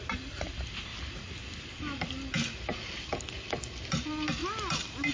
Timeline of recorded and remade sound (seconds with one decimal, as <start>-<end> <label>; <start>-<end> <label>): 0.0-5.1 recorded